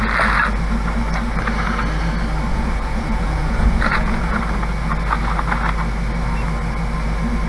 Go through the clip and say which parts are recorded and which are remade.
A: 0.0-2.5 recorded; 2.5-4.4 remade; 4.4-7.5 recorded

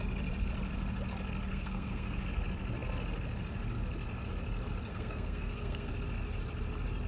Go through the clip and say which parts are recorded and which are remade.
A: 0.0-1.5 recorded; 1.5-2.2 remade; 2.2-4.9 recorded; 4.9-5.9 remade; 5.9-7.1 recorded

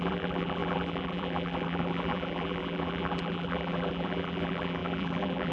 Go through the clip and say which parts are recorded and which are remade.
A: 0.0-5.5 remade

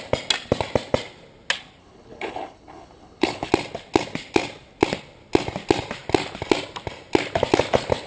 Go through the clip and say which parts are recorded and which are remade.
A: 0.0-1.8 recorded; 1.8-3.5 remade; 3.5-8.1 recorded

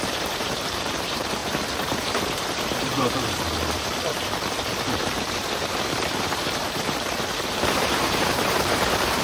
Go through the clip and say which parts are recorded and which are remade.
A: 0.0-9.2 remade